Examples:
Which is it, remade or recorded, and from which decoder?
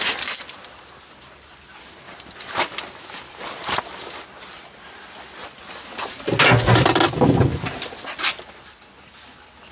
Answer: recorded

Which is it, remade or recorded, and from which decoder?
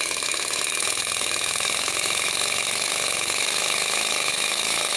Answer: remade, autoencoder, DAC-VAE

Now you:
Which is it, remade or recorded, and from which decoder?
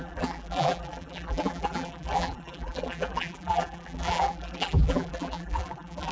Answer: remade, vocoder, BigVGAN v2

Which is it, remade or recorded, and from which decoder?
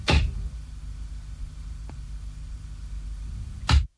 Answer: recorded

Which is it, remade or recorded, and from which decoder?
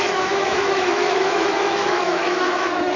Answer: remade, autoencoder, DAC-VAE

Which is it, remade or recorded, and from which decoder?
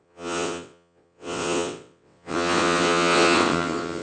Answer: remade, vocoder, WaveNeXt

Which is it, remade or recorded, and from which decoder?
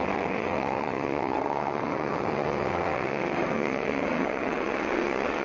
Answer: remade, vocoder, WaveNeXt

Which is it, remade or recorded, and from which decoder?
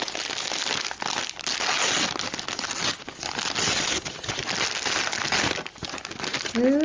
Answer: recorded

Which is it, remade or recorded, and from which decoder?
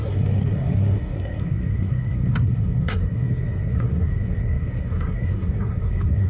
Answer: remade, codec, SNAC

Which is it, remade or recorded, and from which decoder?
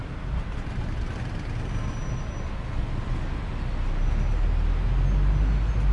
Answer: recorded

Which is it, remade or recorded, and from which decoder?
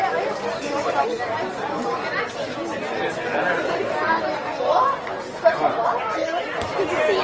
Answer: recorded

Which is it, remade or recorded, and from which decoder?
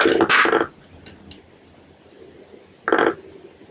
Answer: recorded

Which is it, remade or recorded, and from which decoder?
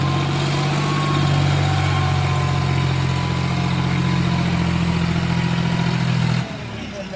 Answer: recorded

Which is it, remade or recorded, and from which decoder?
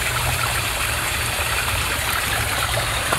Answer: remade, vocoder, BigVGAN v2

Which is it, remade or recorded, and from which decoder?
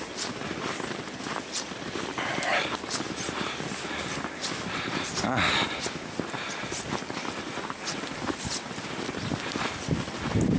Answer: recorded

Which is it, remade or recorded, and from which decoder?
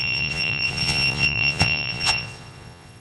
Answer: remade, vocoder, Vocos